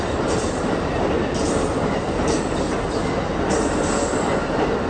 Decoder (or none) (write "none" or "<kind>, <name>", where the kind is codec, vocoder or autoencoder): none